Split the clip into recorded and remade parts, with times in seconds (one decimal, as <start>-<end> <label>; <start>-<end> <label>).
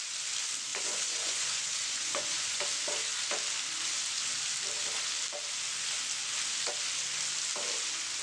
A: 0.0-0.7 recorded; 0.7-2.6 remade; 2.6-8.2 recorded